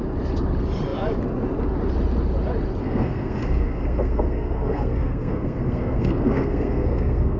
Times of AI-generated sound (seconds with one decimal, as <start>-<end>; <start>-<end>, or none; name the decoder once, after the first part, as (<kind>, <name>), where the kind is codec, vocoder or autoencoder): 2.8-7.4 (codec, SNAC)